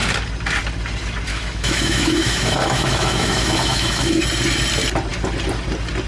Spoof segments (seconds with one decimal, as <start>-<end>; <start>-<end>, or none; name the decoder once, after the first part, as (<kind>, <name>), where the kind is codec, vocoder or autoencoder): 1.3-4.2 (autoencoder, DAC-VAE)